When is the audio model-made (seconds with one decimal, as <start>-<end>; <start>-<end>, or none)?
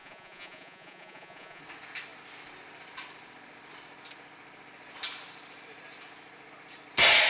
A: 0.0-1.6